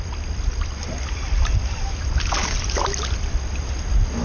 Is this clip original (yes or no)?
yes